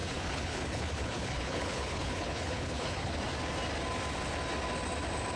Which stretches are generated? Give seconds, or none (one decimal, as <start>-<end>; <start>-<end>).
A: 0.0-3.2